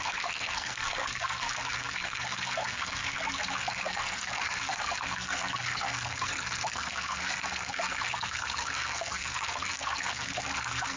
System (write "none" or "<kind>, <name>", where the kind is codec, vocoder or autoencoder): codec, SNAC